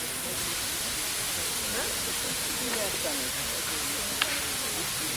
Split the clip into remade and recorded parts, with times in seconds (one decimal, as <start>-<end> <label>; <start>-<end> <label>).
0.0-5.2 recorded